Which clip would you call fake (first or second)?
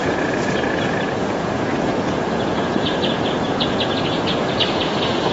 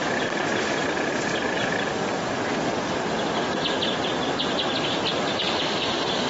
first